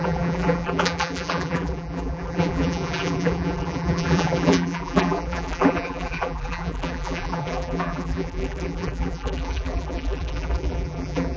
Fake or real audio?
fake